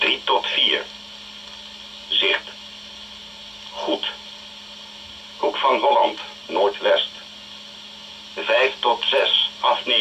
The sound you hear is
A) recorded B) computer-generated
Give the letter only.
A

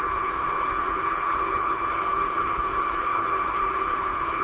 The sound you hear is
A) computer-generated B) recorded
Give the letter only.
A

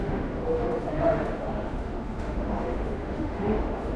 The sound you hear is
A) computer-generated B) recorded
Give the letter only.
A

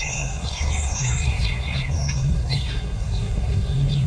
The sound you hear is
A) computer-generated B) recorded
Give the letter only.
A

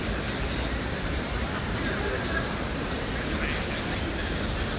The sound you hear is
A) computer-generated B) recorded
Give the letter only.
B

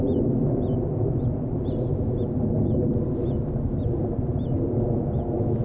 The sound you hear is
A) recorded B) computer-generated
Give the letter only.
A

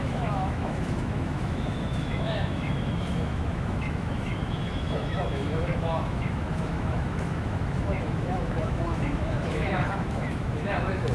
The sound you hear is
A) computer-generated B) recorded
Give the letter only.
A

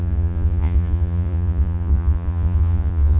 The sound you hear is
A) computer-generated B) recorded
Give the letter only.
A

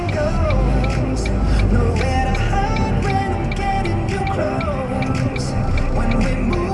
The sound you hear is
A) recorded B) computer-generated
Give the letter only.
A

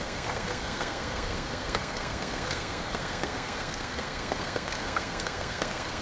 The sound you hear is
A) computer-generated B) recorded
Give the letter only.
A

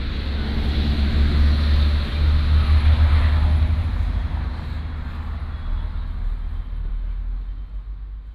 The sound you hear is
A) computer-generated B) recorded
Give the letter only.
B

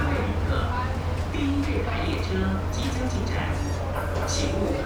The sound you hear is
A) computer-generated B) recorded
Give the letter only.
B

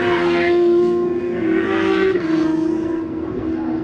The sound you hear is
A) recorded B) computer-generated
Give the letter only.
B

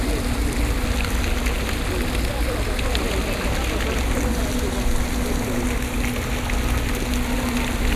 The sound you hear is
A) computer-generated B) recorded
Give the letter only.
B